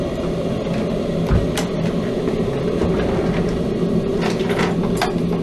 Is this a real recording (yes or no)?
yes